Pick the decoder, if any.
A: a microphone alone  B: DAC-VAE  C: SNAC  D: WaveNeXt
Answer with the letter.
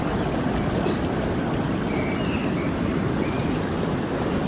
A